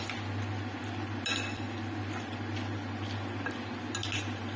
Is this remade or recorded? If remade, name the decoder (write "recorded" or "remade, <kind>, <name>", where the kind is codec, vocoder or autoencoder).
recorded